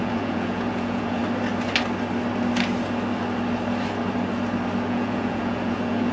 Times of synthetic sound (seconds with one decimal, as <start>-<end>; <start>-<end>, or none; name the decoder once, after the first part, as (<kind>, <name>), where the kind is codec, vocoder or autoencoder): 0.0-1.2 (vocoder, Vocos); 4.9-6.1

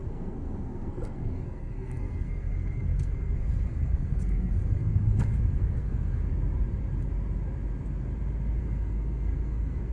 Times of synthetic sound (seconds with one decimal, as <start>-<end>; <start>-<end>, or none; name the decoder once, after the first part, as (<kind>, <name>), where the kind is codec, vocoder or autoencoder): 0.0-6.3 (codec, SNAC); 8.6-9.9

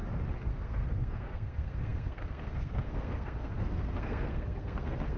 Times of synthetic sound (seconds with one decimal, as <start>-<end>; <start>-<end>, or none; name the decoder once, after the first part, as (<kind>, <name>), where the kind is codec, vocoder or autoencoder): 0.5-5.2 (codec, SNAC)

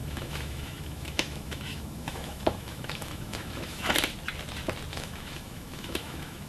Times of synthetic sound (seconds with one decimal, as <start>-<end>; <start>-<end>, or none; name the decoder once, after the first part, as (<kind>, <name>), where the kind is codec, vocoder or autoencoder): 0.0-3.9 (autoencoder, DAC-VAE); 4.9-6.5

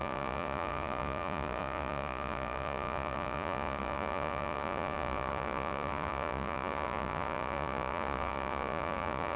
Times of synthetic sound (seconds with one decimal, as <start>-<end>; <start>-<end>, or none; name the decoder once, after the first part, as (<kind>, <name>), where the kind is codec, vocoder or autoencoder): 0.0-9.4 (vocoder, Vocos)